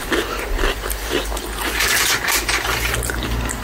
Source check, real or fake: real